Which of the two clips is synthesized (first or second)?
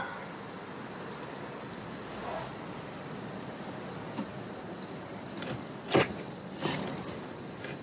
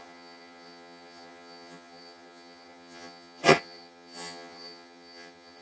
second